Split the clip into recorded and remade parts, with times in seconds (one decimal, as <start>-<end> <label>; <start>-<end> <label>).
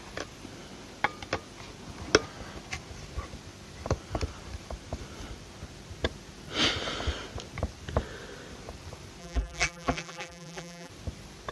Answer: 0.0-9.2 recorded; 9.2-10.9 remade; 10.9-11.5 recorded